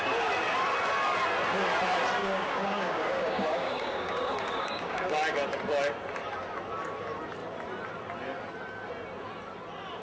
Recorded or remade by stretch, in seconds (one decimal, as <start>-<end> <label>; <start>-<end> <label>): 0.0-2.2 recorded; 2.2-5.1 remade; 5.1-10.0 recorded

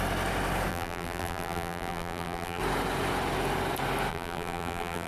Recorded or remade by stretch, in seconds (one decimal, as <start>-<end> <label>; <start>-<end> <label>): 0.0-0.7 recorded; 0.7-2.6 remade; 2.6-4.1 recorded; 4.1-5.1 remade

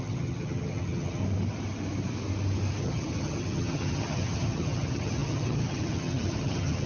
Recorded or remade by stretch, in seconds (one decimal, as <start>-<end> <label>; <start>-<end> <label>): 0.0-1.2 remade; 1.2-2.8 recorded; 2.8-6.9 remade

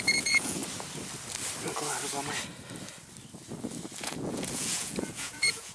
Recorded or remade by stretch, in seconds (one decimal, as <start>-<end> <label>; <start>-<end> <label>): 0.0-0.6 remade; 0.6-4.0 recorded; 4.0-5.7 remade

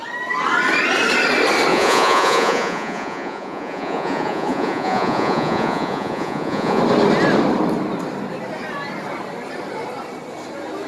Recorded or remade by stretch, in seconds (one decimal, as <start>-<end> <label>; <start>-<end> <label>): 0.0-1.7 recorded; 1.7-6.8 remade; 6.8-10.9 recorded

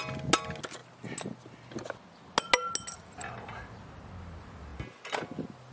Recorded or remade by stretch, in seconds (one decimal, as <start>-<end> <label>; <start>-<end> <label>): 0.0-5.7 recorded